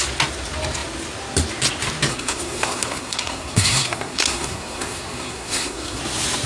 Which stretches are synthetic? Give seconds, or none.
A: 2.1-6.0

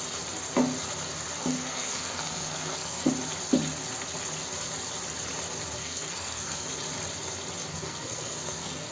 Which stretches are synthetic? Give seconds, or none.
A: 1.4-3.1; 5.8-6.7; 7.7-8.9

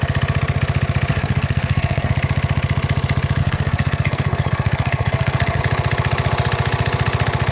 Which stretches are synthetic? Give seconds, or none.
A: 1.1-2.1; 3.4-5.6

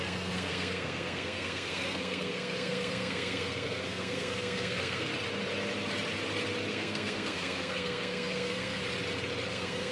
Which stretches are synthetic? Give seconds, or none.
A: 0.0-5.1; 6.7-8.8; 9.5-9.9

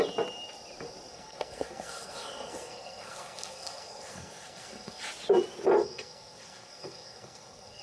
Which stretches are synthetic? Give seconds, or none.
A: 1.1-5.0; 5.8-7.8